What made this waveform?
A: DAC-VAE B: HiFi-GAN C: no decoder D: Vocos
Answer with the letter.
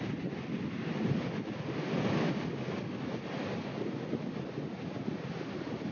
C